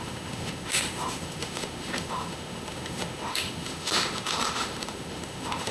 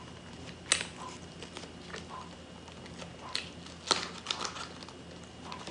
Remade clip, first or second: first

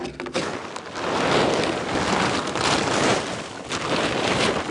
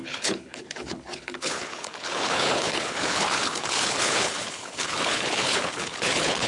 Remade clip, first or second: second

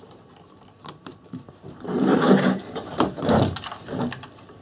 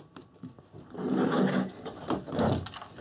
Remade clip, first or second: first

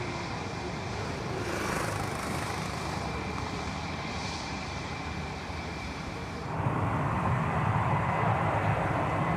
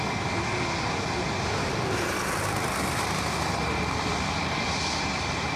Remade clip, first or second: first